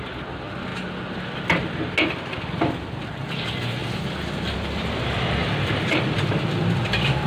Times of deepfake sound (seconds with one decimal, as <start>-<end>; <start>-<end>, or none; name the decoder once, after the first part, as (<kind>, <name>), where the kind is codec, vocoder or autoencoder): 5.4-7.3 (vocoder, BigVGAN v2)